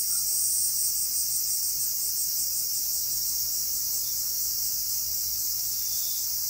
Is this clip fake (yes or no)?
no